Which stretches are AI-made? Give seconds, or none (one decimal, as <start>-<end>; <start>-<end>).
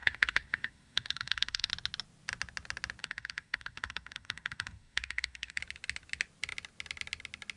0.0-1.7; 3.0-5.6